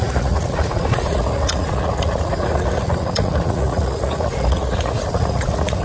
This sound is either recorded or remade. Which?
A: remade